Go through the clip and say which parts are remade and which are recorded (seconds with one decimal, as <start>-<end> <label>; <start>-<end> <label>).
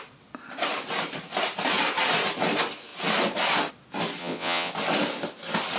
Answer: 0.0-4.2 recorded; 4.2-4.7 remade; 4.7-5.8 recorded